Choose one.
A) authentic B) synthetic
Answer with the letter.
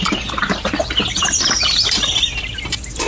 A